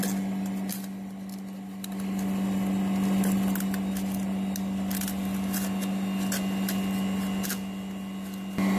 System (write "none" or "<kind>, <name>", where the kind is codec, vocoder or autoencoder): none